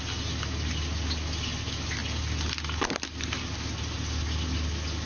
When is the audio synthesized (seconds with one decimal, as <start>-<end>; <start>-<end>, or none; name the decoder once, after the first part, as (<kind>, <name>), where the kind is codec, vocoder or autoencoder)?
none